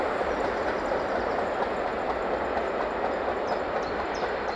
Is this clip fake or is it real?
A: real